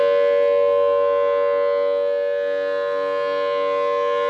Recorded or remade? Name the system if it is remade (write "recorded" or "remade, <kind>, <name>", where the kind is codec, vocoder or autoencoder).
recorded